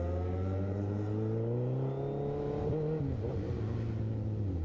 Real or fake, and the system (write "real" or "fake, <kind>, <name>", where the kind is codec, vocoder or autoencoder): real